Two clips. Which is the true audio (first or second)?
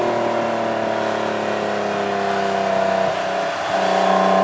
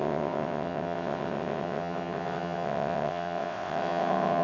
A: first